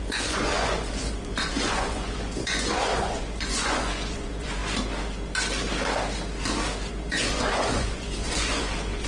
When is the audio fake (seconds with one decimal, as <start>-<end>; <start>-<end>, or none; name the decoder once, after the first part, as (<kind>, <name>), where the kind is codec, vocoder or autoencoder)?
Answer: 0.0-4.6 (vocoder, Vocos); 6.9-9.1